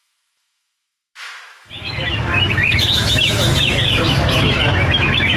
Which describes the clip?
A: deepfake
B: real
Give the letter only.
A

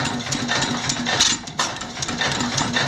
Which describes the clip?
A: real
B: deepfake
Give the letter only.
A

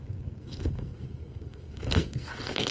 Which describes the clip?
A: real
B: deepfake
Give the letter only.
B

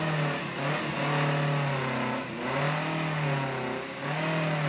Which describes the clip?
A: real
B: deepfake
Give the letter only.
A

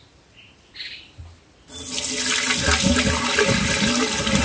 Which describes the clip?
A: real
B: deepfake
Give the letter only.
A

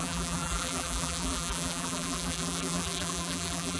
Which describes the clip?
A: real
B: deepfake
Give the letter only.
B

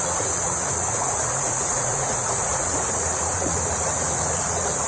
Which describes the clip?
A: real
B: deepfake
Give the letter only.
B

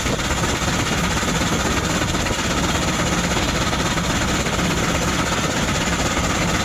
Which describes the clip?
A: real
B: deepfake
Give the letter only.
A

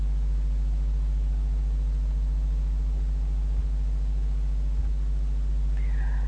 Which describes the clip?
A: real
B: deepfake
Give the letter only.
A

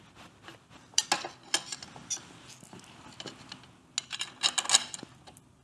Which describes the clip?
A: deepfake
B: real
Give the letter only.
B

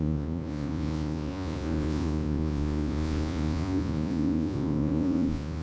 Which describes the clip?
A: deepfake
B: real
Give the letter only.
A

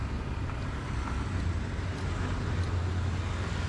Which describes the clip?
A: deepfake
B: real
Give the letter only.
B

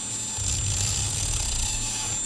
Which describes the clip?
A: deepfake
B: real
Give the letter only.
B